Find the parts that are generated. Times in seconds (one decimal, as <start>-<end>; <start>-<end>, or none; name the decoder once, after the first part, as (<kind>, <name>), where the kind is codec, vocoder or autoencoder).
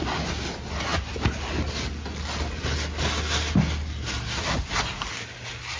none